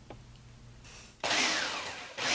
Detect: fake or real real